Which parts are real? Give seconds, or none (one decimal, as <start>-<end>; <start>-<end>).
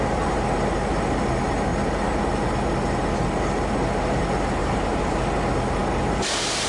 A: 0.0-4.6; 5.3-6.7